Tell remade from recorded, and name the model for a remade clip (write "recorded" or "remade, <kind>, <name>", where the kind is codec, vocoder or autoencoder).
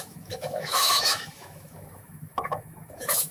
remade, autoencoder, DAC-VAE